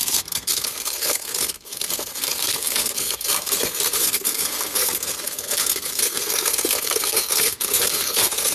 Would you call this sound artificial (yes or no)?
yes